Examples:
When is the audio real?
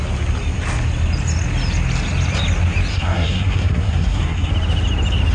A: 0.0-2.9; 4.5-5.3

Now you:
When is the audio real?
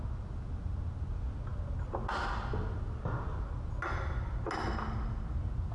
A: 0.0-5.7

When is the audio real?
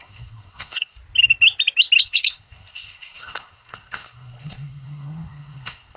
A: 1.0-2.0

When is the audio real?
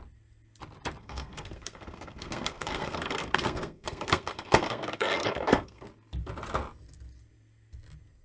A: 0.0-1.0; 5.8-8.2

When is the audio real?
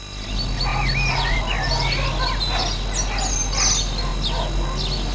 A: 0.0-5.1